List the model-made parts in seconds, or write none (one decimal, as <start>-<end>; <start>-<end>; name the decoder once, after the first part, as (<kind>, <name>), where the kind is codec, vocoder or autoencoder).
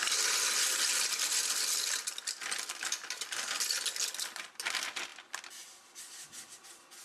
none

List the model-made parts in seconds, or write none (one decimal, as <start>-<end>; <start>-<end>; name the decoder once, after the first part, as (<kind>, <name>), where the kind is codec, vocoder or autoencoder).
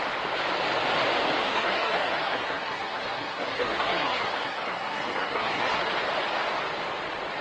1.5-5.9 (codec, SNAC)